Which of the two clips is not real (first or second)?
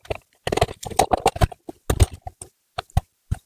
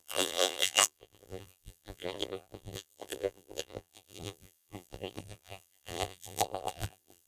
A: second